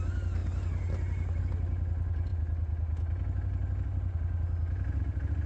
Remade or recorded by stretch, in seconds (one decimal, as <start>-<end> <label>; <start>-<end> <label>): 0.0-5.5 recorded